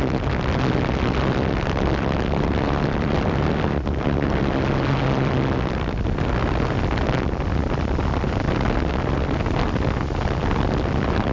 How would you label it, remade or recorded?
recorded